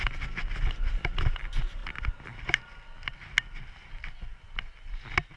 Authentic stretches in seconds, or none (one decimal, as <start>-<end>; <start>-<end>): 0.0-5.4